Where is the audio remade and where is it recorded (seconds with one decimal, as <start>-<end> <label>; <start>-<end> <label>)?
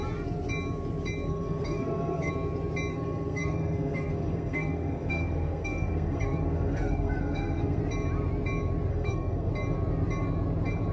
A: 0.0-1.3 recorded; 1.3-2.3 remade; 2.3-2.9 recorded; 2.9-7.8 remade; 7.8-8.9 recorded; 8.9-9.5 remade; 9.5-10.9 recorded